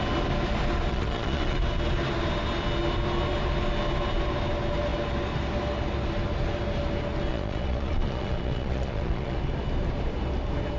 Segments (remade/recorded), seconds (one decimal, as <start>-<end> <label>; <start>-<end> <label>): 0.0-0.9 recorded; 0.9-1.6 remade; 1.6-7.3 recorded; 7.3-9.4 remade; 9.4-10.8 recorded